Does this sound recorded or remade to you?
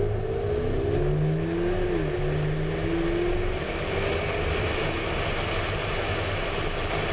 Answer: recorded